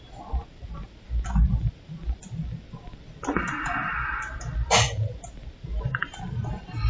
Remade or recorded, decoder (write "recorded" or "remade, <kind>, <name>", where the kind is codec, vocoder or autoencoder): recorded